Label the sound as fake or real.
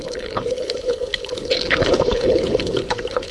fake